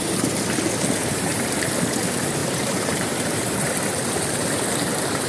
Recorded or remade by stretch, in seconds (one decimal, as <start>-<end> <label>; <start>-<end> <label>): 0.0-1.0 recorded; 1.0-1.7 remade; 1.7-2.4 recorded; 2.4-4.3 remade; 4.3-5.3 recorded